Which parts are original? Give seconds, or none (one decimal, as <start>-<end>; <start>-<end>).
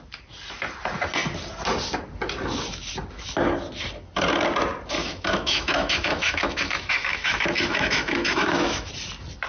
0.0-5.0; 8.9-9.5